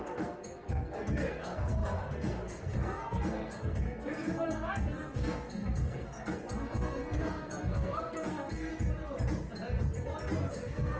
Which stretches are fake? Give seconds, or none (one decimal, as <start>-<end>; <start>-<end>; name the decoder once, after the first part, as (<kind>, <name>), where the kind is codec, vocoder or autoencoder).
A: 0.0-8.7 (codec, SNAC); 10.5-11.0